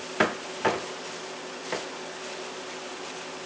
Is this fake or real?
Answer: real